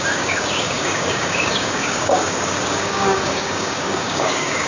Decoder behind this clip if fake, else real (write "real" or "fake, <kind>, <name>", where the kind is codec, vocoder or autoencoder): fake, codec, DAC